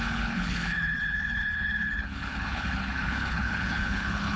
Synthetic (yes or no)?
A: yes